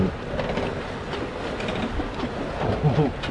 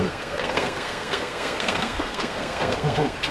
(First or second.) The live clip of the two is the first